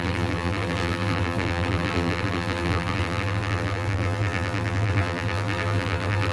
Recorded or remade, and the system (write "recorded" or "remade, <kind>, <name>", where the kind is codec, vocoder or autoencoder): remade, vocoder, BigVGAN v2